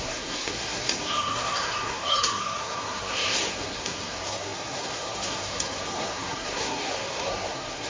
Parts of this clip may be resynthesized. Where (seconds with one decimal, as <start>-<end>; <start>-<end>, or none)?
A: 0.0-7.9